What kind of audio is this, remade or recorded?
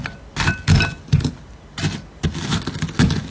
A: recorded